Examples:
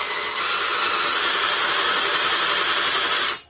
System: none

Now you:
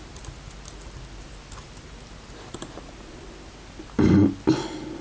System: none